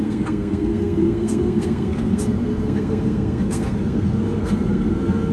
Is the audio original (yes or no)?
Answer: no